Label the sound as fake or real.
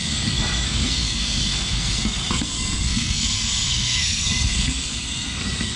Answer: fake